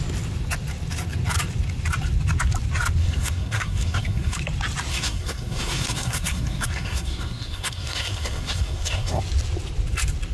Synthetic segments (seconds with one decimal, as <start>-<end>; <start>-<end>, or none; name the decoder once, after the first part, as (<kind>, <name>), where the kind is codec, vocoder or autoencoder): 3.0-4.4 (codec, SNAC); 4.9-9.2